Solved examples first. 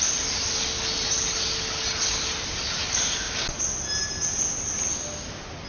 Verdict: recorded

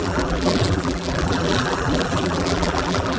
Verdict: remade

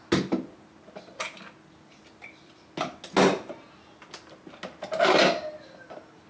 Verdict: recorded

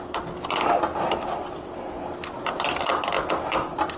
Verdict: recorded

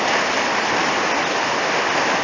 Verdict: recorded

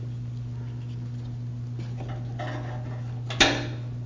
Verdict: recorded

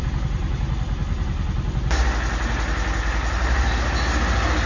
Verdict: recorded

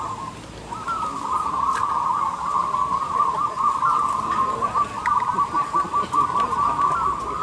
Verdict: recorded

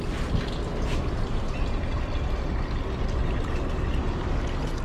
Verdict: recorded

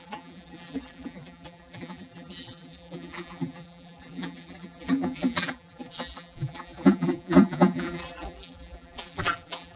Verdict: remade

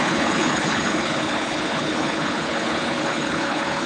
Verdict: remade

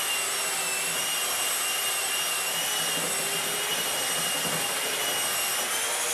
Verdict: recorded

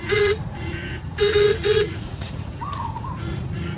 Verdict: remade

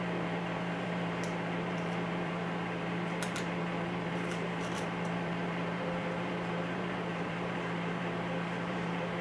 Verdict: remade